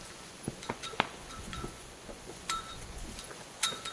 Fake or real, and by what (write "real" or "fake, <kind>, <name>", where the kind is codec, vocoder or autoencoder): fake, vocoder, Vocos